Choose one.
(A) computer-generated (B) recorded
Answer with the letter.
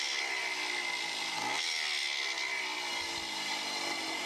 B